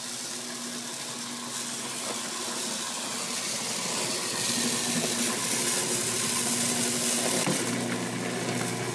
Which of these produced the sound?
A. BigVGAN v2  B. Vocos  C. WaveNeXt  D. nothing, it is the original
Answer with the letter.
D